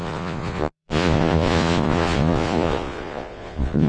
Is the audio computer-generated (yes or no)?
yes